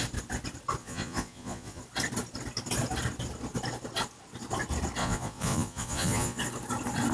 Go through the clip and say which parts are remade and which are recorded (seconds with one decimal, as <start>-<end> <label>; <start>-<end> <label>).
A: 0.0-0.8 recorded; 0.8-1.8 remade; 1.8-5.0 recorded; 5.0-6.4 remade; 6.4-7.1 recorded